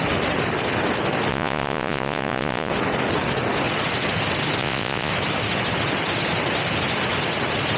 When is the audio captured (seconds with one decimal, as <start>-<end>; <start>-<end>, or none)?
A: 0.0-1.3; 2.7-4.6; 5.1-7.8